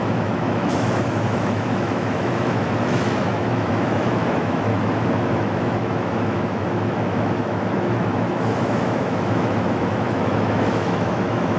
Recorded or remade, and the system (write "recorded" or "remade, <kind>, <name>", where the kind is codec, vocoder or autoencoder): remade, autoencoder, DAC-VAE